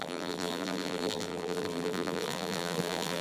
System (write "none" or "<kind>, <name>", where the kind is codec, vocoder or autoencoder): vocoder, BigVGAN v2